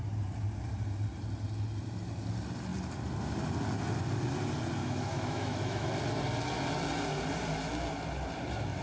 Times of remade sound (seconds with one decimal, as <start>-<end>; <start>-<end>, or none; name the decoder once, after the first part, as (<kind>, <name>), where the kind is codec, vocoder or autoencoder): 4.8-5.9 (autoencoder, DAC-VAE)